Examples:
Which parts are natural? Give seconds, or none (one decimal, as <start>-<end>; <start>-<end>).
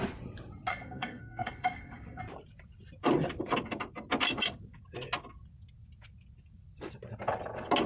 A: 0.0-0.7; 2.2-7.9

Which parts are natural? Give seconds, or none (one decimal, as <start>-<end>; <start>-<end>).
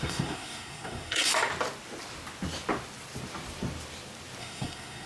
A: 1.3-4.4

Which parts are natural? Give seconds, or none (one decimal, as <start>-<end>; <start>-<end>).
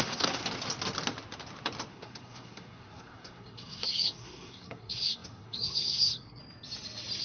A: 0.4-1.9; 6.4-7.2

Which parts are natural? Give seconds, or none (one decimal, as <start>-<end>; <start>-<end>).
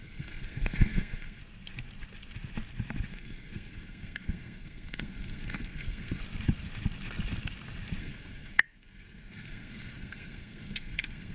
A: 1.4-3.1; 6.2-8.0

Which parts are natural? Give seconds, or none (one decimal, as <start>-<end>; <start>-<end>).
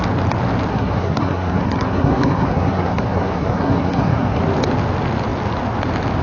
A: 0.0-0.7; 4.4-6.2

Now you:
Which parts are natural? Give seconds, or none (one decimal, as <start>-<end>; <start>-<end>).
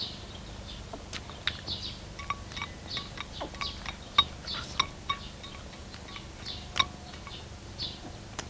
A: 0.0-8.5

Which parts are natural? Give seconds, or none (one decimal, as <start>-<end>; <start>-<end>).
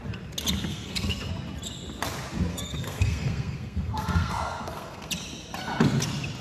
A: 0.0-0.7; 1.3-2.5; 5.1-6.4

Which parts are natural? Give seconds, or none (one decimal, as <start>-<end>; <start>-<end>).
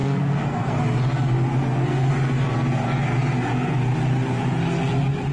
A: 0.8-1.5; 2.1-5.3